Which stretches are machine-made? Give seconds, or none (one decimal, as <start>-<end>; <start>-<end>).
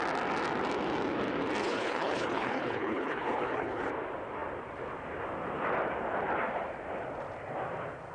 1.6-3.9